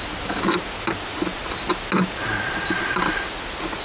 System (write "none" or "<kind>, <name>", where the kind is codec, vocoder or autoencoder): none